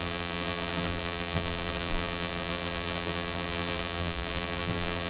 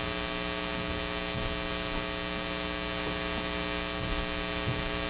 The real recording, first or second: second